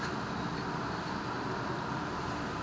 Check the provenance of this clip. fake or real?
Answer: real